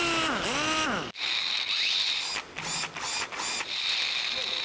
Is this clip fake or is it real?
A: real